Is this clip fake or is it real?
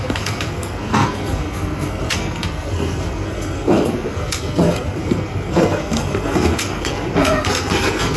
fake